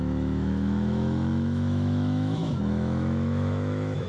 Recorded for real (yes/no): no